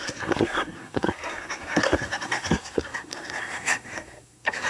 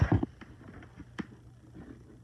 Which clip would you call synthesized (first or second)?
first